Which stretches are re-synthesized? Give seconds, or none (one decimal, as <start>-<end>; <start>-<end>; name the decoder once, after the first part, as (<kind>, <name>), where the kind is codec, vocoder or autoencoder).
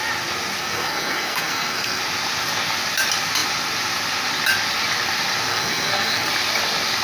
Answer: 0.6-2.0 (codec, SNAC); 5.5-6.3